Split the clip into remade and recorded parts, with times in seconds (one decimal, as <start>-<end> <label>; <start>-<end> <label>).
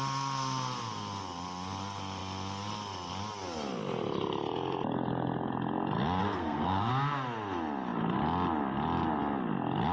0.0-6.2 recorded; 6.2-6.9 remade; 6.9-9.9 recorded